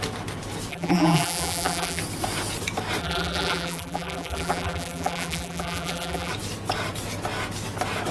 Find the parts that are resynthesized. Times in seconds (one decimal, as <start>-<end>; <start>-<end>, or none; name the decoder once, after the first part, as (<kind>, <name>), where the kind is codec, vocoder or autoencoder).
0.7-2.0 (vocoder, BigVGAN v2); 3.0-6.3